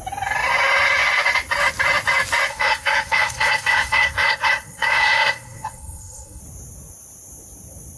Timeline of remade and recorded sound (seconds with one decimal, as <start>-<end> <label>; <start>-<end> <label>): 0.0-2.5 recorded; 2.5-6.4 remade; 6.4-8.0 recorded